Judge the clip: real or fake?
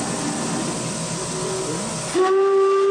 real